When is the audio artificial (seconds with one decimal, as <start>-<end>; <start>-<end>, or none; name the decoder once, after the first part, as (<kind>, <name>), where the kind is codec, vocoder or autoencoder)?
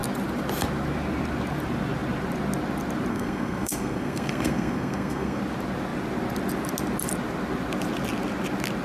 3.1-5.4 (codec, SNAC)